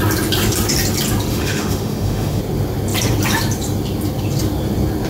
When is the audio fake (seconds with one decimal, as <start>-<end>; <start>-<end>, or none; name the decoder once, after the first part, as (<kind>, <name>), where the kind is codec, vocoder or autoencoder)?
1.3-2.4 (autoencoder, DAC-VAE)